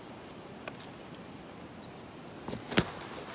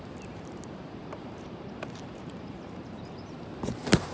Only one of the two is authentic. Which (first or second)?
first